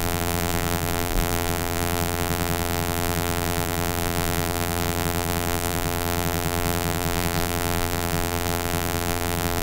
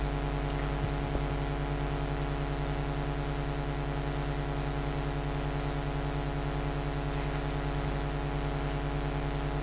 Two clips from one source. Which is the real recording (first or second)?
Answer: second